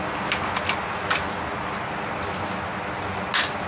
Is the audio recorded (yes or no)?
yes